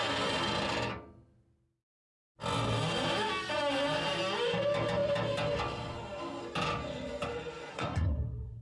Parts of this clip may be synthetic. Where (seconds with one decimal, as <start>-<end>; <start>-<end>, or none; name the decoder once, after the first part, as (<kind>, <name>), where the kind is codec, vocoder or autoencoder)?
7.7-8.6 (codec, SNAC)